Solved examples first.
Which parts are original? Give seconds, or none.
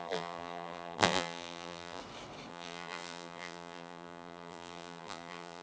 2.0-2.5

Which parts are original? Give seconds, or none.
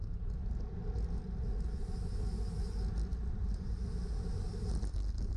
0.0-3.1; 3.8-5.4